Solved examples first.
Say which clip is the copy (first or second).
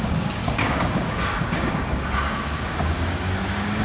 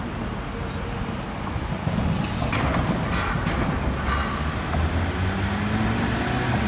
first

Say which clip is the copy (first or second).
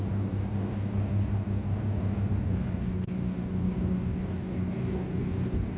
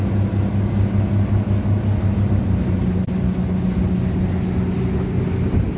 first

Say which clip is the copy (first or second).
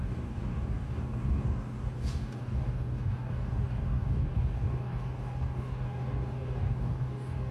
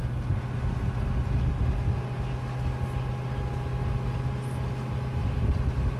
first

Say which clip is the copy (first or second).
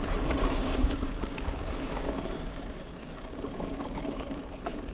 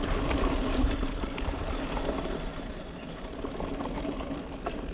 first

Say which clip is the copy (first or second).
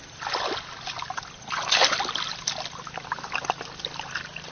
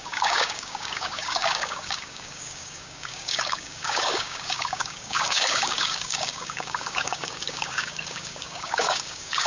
second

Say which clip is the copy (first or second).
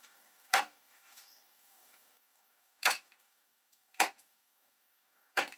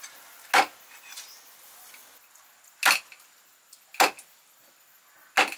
first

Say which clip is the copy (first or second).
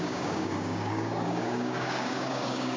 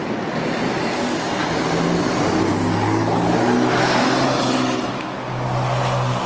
first